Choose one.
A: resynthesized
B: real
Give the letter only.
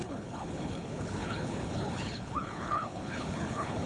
A